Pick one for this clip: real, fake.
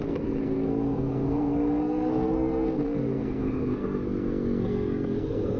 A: fake